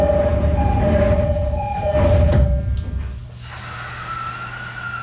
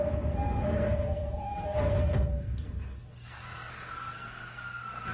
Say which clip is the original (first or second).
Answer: first